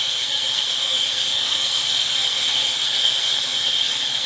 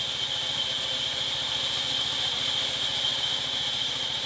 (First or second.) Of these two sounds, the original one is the second